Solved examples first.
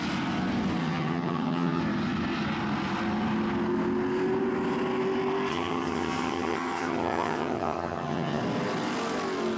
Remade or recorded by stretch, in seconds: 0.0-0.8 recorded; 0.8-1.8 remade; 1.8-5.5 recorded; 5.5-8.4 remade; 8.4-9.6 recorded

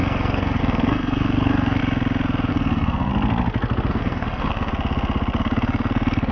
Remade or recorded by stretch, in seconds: 0.0-1.8 remade; 1.8-2.5 recorded; 2.5-3.1 remade; 3.1-3.9 recorded; 3.9-4.7 remade; 4.7-5.4 recorded; 5.4-6.3 remade

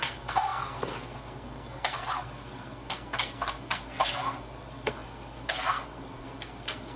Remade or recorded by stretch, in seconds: 0.0-7.0 remade